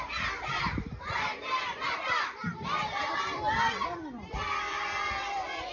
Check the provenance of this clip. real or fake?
fake